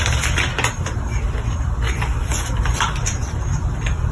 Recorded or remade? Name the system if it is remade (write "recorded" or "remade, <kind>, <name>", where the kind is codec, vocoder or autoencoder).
remade, vocoder, BigVGAN v2